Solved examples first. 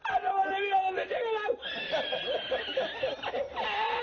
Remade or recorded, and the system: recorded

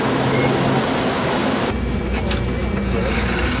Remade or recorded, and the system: recorded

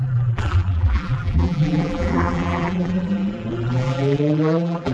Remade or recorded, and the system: remade, vocoder, BigVGAN v2